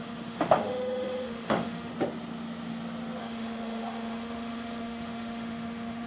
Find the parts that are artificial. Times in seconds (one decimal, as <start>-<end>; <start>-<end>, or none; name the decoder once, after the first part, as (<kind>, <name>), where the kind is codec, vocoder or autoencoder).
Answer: 0.0-1.9 (autoencoder, DAC-VAE); 3.2-6.1